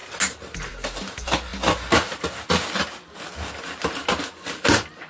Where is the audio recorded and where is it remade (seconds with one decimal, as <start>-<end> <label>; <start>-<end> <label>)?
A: 0.0-5.1 recorded